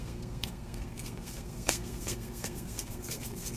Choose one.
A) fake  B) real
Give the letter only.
A